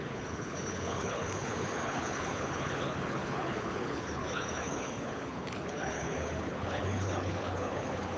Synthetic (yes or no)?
yes